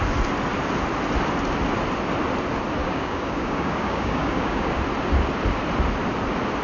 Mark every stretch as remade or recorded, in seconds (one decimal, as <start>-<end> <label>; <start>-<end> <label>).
0.0-2.8 recorded; 2.8-4.8 remade; 4.8-6.6 recorded